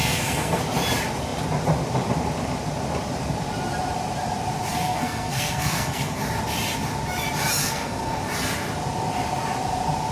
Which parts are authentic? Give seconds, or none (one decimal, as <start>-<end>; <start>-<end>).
0.6-4.7; 6.2-7.6; 8.2-10.1